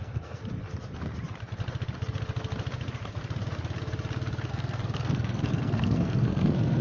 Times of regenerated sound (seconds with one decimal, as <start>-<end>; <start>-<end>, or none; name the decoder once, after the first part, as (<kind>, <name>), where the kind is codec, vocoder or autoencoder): 0.0-0.4 (codec, SNAC); 4.5-6.8